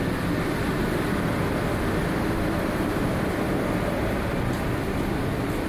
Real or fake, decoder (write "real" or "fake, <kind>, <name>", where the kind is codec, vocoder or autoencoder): real